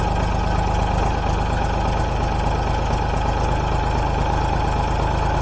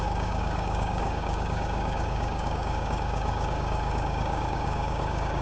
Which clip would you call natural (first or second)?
first